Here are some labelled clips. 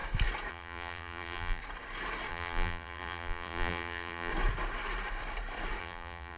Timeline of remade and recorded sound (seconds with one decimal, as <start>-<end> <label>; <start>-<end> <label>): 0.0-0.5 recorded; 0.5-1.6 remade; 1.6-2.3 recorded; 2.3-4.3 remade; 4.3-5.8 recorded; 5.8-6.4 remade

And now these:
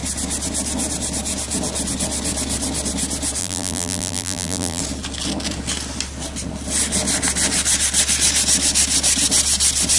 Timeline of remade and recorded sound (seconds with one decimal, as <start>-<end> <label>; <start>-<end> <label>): 0.0-3.4 recorded; 3.4-4.8 remade; 4.8-10.0 recorded

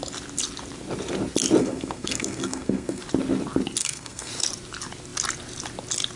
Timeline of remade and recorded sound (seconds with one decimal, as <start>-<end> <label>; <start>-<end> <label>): 0.0-1.6 recorded; 1.6-3.0 remade; 3.0-3.8 recorded; 3.8-4.3 remade; 4.3-6.2 recorded

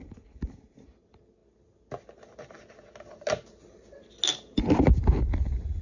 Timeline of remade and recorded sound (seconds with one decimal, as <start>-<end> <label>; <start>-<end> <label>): 0.0-5.8 recorded